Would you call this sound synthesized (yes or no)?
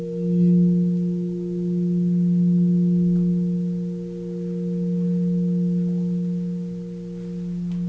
no